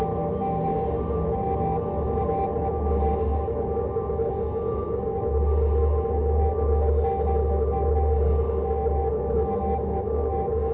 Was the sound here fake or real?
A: real